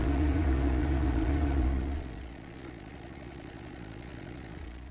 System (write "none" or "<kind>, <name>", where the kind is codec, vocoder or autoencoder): vocoder, Vocos